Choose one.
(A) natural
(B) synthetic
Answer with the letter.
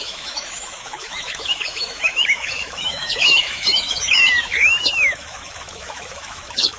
B